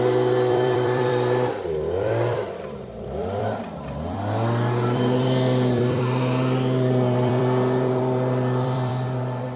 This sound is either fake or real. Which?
fake